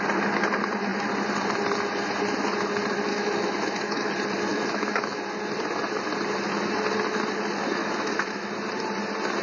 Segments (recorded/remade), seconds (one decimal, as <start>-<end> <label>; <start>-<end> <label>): 0.0-3.1 recorded; 3.1-4.1 remade; 4.1-4.5 recorded; 4.5-5.2 remade; 5.2-7.8 recorded; 7.8-8.5 remade; 8.5-9.4 recorded